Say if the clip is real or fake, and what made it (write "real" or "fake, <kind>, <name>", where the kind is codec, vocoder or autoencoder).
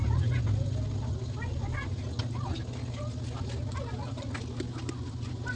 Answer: real